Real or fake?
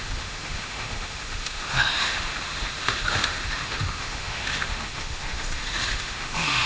fake